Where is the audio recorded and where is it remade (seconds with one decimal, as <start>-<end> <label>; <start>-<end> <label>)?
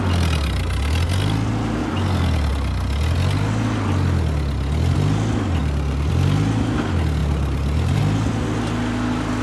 0.0-1.8 recorded; 1.8-2.5 remade; 2.5-5.6 recorded; 5.6-6.1 remade; 6.1-7.2 recorded; 7.2-8.0 remade; 8.0-9.4 recorded